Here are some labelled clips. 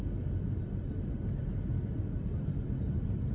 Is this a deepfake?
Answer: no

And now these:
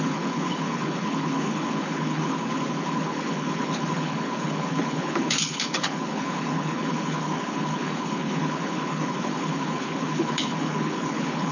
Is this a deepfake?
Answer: yes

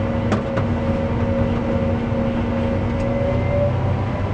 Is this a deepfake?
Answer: no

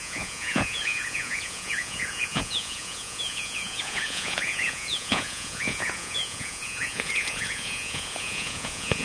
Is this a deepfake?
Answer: yes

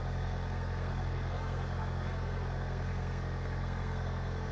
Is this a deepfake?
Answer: yes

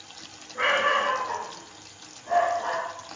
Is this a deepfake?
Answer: no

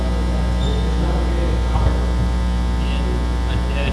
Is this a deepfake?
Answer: no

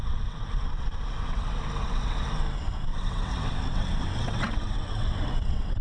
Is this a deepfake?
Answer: yes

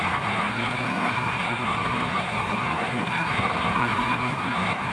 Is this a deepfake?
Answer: yes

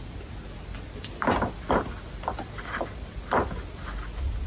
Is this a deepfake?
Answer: no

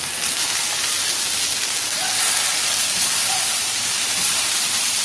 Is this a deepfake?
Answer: no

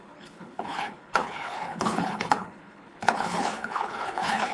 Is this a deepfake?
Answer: yes